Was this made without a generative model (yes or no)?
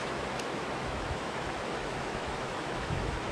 no